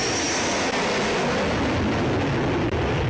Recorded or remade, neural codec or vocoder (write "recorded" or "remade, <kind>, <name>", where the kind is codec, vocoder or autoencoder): recorded